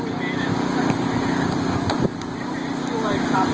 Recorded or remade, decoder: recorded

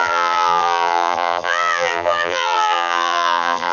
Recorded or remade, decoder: remade, vocoder, BigVGAN v2